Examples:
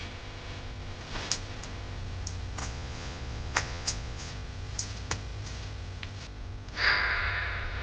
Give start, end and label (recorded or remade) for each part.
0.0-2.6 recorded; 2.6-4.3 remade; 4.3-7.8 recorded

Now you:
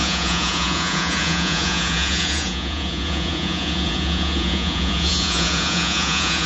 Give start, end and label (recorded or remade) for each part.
0.0-6.5 remade